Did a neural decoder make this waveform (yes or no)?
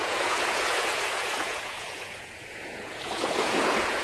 yes